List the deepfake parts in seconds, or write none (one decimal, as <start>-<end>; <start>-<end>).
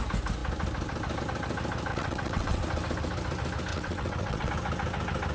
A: 1.9-2.6; 3.7-4.5